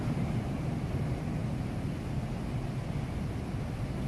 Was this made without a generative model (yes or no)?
yes